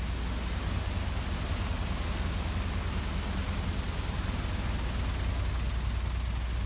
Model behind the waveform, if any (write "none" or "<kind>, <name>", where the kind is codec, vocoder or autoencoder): none